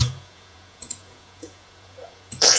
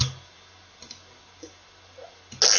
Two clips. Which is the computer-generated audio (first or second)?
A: first